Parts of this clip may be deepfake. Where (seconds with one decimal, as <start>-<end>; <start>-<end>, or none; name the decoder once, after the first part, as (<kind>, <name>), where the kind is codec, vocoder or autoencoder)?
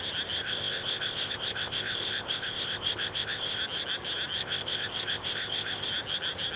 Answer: 0.4-3.6 (codec, ZipCodec); 4.4-5.9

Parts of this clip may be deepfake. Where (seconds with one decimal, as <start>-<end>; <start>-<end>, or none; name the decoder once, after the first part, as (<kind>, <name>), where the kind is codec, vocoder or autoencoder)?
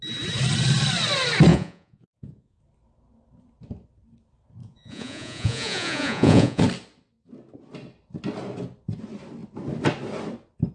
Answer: 1.5-2.6 (vocoder, Vocos); 4.6-6.6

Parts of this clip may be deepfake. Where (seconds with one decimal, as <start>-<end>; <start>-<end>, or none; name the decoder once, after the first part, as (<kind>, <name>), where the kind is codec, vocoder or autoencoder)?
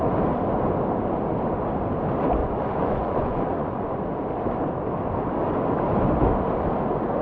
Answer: 2.4-4.0 (vocoder, Vocos)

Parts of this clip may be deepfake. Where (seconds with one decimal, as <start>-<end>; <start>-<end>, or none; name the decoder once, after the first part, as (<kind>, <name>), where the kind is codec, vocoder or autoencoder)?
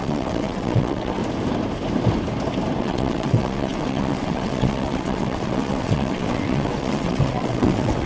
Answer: 0.0-1.2 (vocoder, WaveNeXt); 2.8-8.1